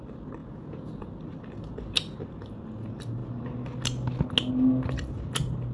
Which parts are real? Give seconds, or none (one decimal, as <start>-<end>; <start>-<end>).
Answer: 0.0-0.4; 1.1-5.7